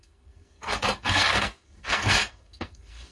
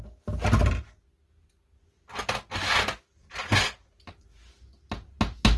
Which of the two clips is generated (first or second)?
first